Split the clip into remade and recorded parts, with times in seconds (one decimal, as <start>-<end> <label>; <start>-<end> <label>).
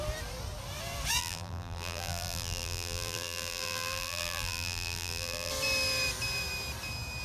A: 0.0-1.2 recorded; 1.2-5.5 remade; 5.5-7.2 recorded